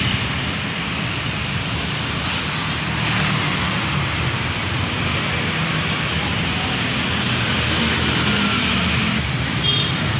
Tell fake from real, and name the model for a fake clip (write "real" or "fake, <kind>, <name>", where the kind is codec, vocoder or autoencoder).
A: real